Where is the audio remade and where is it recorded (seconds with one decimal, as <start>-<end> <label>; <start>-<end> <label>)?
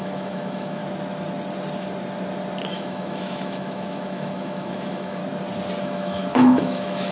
0.0-0.8 remade; 0.8-2.7 recorded; 2.7-5.2 remade; 5.2-5.8 recorded; 5.8-7.1 remade